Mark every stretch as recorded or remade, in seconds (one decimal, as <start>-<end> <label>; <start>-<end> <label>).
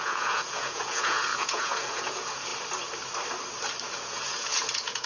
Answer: 0.0-2.5 remade; 2.5-3.8 recorded; 3.8-5.1 remade